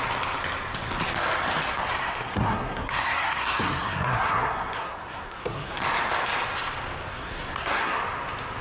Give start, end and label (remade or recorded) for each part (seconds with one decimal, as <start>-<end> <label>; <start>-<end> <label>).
0.0-2.0 recorded; 2.0-5.8 remade; 5.8-7.1 recorded; 7.1-8.0 remade; 8.0-8.6 recorded